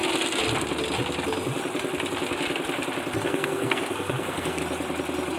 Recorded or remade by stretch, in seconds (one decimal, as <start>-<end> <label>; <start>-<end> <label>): 0.0-3.2 recorded; 3.2-4.6 remade; 4.6-5.4 recorded

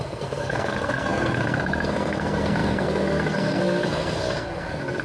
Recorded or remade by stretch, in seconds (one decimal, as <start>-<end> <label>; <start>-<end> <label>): 0.0-5.0 remade

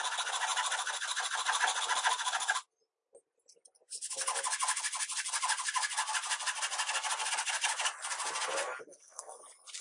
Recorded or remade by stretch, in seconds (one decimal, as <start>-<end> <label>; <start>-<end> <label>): 0.0-8.8 recorded; 8.8-9.4 remade; 9.4-9.8 recorded

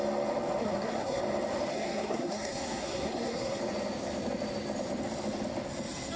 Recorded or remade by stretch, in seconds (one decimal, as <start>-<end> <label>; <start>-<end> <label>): 0.0-0.6 recorded; 0.6-1.2 remade; 1.2-1.7 recorded; 1.7-3.6 remade; 3.6-6.2 recorded

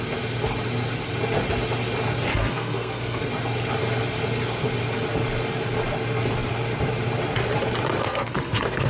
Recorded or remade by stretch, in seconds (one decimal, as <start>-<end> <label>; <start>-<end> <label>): 0.0-2.3 recorded; 2.3-3.2 remade; 3.2-8.0 recorded; 8.0-8.9 remade

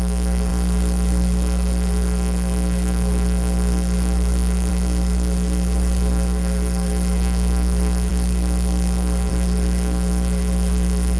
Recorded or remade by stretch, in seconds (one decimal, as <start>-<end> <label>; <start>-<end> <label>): 0.0-11.2 remade